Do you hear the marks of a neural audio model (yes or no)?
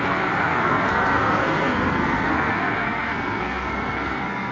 yes